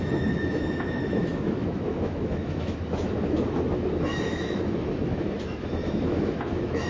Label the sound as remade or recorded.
remade